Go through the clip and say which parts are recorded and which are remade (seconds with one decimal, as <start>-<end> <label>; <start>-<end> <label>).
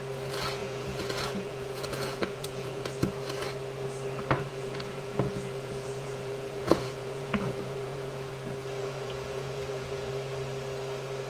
0.0-0.6 recorded; 0.6-2.9 remade; 2.9-4.5 recorded; 4.5-8.3 remade; 8.3-8.8 recorded; 8.8-10.1 remade; 10.1-11.3 recorded